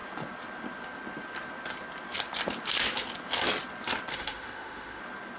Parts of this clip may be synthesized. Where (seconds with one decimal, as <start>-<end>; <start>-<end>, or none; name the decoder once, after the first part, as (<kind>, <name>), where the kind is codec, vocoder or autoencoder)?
4.1-5.0 (autoencoder, DAC-VAE)

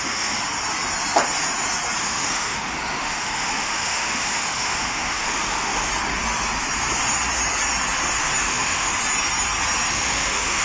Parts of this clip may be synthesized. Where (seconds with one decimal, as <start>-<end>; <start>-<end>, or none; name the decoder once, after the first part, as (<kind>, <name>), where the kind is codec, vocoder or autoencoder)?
0.0-0.4 (autoencoder, DAC-VAE); 2.0-5.9; 8.4-8.9; 9.9-10.6